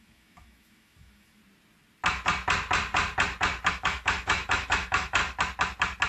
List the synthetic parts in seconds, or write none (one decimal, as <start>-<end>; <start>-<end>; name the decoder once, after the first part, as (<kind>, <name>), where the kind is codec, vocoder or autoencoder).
0.0-1.4 (autoencoder, DAC-VAE); 3.7-5.2